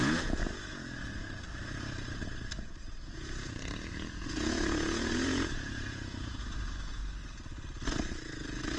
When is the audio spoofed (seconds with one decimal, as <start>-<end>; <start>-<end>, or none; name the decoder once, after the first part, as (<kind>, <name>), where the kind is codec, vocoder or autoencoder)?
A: 0.0-0.4 (vocoder, Vocos); 3.1-7.0; 7.9-8.8